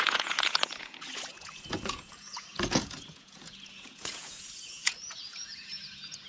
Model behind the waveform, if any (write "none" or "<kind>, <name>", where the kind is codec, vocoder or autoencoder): vocoder, Vocos